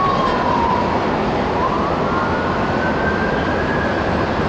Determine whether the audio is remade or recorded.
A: recorded